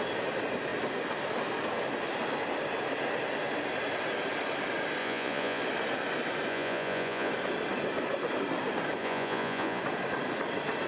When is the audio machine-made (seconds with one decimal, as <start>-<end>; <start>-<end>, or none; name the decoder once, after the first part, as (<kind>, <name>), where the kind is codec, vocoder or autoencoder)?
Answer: 5.0-5.6 (vocoder, Vocos); 6.5-7.3; 9.0-9.8